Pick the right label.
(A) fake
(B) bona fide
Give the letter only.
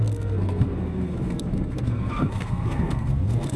A